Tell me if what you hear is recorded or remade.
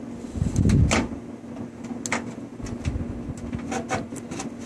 recorded